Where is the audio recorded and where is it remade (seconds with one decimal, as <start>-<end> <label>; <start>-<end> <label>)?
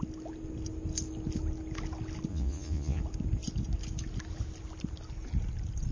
0.0-2.3 recorded; 2.3-3.0 remade; 3.0-5.9 recorded